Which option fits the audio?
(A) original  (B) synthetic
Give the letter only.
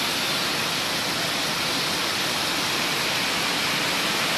A